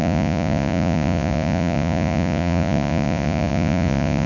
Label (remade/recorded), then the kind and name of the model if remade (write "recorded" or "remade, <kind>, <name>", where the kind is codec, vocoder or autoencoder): remade, vocoder, Vocos